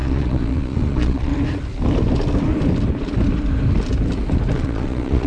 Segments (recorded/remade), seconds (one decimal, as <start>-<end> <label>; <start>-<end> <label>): 0.0-1.3 remade; 1.3-4.5 recorded; 4.5-5.3 remade